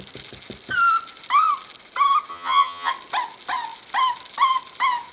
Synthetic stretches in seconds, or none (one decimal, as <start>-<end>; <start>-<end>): 2.3-2.9